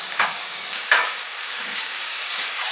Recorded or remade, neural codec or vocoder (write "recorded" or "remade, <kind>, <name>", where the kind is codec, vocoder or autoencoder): remade, codec, DAC